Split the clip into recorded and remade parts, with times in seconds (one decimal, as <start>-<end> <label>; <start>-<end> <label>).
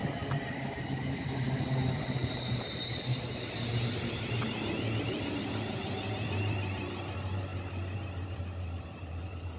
0.0-0.6 recorded; 0.6-9.6 remade